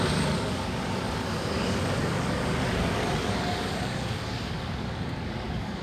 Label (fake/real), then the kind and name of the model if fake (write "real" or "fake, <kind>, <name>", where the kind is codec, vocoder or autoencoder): fake, codec, DAC